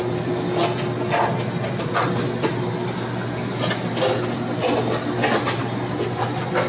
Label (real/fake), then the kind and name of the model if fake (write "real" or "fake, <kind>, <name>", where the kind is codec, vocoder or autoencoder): real